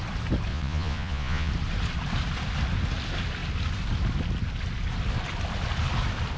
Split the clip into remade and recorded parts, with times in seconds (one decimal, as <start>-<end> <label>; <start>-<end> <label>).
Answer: 0.0-0.5 recorded; 0.5-1.5 remade; 1.5-6.4 recorded